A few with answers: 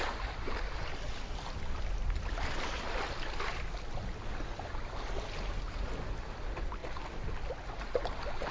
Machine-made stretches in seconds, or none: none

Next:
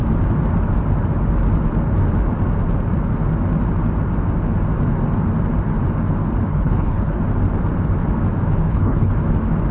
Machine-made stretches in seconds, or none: 6.5-7.2 (codec, HILCodec); 8.6-9.1

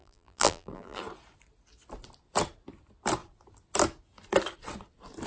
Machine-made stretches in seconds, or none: 0.0-1.0 (vocoder, BigVGAN v2)

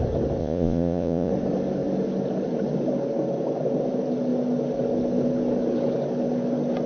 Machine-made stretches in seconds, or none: 0.4-1.3 (vocoder, Vocos)

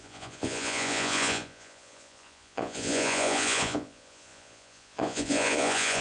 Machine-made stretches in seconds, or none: 0.0-6.0 (vocoder, Vocos)

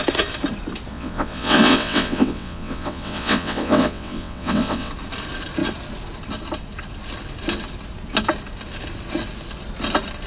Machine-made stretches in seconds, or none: 0.9-4.9 (vocoder, WaveNeXt)

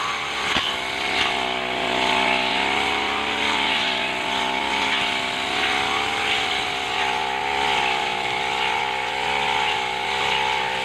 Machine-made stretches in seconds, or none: none

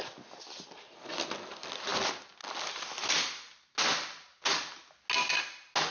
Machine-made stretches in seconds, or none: none